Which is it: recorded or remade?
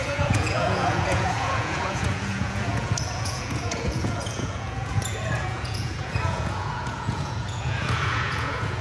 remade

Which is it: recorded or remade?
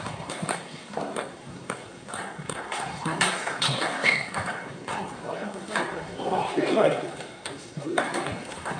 remade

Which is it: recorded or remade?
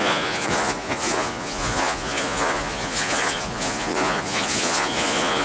remade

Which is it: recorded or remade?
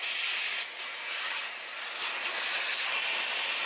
recorded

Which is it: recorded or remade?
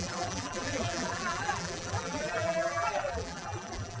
remade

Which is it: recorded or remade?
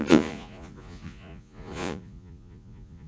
remade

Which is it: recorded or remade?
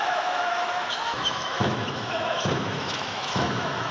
remade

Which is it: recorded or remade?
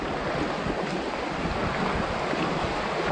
recorded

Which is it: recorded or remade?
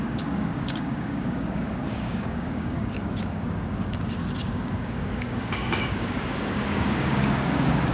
remade